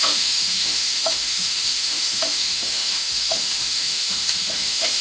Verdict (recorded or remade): remade